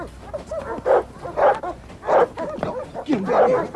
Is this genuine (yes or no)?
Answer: yes